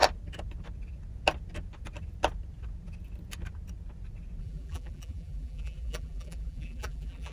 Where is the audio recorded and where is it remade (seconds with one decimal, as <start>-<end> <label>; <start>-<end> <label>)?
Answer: 0.0-4.4 recorded; 4.4-7.3 remade

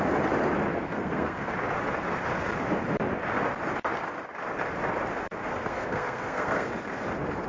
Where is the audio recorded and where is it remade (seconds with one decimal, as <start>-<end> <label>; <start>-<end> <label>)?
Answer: 0.0-0.7 recorded; 0.7-1.5 remade; 1.5-5.5 recorded; 5.5-6.7 remade; 6.7-7.5 recorded